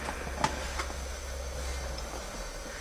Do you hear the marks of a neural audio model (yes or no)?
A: no